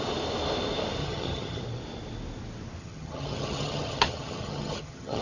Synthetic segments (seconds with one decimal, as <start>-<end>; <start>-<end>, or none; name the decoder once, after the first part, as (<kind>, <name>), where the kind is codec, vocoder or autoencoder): 1.0-1.6 (vocoder, HiFi-GAN); 2.8-5.2